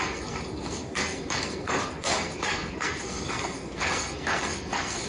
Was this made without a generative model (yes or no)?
no